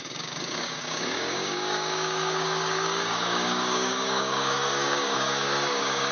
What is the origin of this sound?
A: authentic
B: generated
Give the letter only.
B